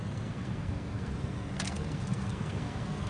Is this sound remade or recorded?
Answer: remade